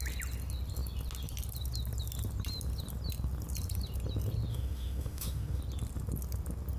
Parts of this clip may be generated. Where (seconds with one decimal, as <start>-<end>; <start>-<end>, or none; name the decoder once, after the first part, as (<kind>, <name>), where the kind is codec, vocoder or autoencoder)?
4.5-5.6 (autoencoder, DAC-VAE)

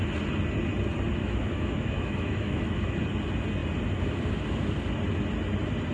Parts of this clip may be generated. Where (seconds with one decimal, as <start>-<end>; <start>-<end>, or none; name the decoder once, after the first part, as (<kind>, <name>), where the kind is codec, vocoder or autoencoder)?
1.2-3.0 (autoencoder, DAC-VAE)